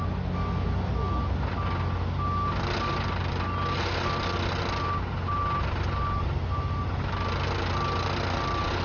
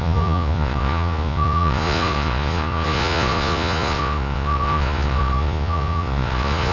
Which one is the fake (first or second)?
second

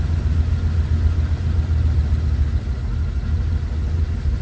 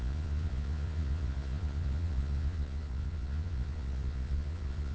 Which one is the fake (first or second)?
second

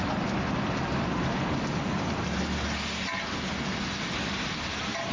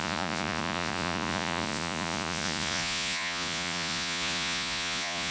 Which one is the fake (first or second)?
second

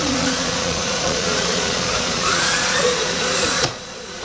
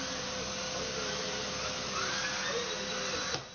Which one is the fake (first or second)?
first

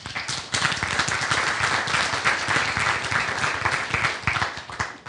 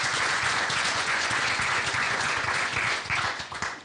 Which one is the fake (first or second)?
second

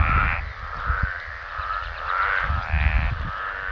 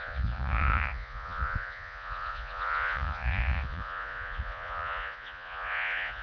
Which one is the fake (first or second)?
second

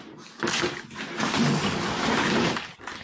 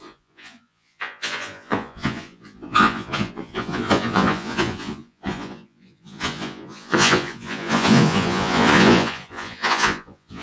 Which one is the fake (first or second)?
second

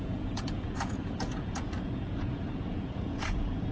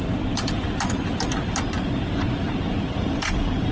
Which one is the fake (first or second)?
first